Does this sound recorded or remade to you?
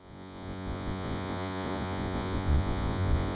remade